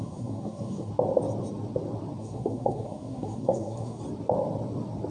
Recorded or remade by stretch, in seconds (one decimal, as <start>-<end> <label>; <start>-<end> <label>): 0.0-0.9 remade; 0.9-2.2 recorded; 2.2-4.0 remade; 4.0-5.1 recorded